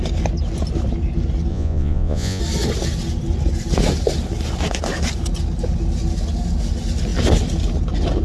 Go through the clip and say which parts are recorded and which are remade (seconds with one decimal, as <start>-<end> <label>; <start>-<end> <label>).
0.0-1.5 recorded; 1.5-2.4 remade; 2.4-8.2 recorded